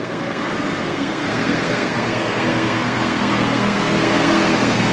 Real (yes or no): no